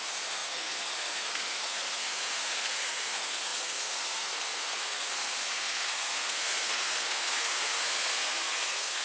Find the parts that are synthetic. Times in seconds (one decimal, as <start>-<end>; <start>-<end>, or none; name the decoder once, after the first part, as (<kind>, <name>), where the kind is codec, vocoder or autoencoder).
0.0-9.0 (codec, SNAC)